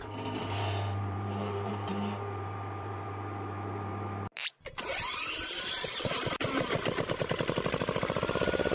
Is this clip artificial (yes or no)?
yes